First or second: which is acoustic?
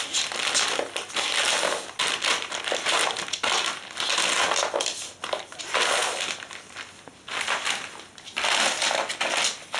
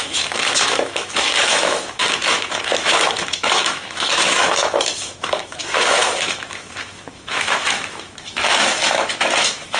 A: first